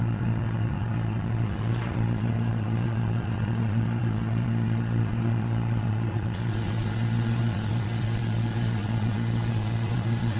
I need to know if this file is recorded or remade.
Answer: remade